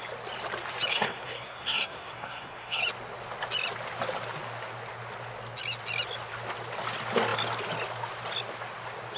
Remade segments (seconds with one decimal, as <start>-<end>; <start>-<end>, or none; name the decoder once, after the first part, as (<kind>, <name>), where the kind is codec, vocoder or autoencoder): 0.9-2.8 (codec, SNAC)